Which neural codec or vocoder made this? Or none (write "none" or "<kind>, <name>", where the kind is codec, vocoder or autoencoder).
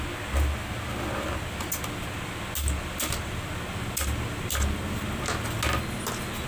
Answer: none